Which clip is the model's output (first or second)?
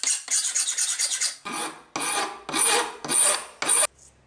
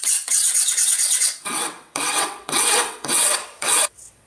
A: second